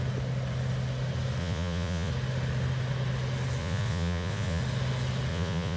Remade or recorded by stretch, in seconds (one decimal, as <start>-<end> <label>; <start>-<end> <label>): 0.0-1.4 recorded; 1.4-2.1 remade; 2.1-3.6 recorded; 3.6-4.6 remade; 4.6-5.3 recorded; 5.3-5.8 remade